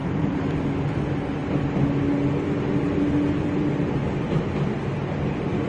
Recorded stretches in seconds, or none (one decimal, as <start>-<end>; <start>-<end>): 0.0-5.7